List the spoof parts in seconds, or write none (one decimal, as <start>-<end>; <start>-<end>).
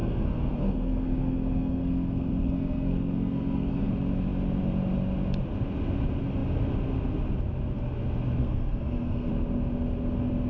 0.0-3.9; 8.4-9.3